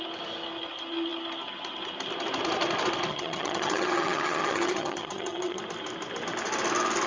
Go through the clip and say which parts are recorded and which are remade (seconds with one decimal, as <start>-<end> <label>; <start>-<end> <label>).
0.0-3.1 recorded; 3.1-5.6 remade; 5.6-7.1 recorded